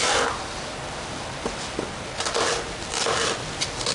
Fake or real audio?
real